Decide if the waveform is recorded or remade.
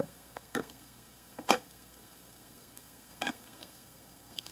remade